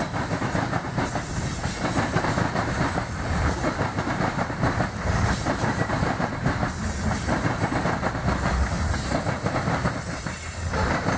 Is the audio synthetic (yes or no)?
yes